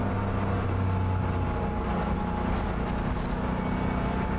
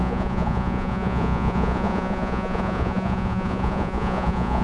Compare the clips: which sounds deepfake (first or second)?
second